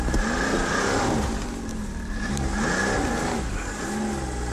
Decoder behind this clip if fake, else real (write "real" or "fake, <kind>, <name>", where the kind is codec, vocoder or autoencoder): real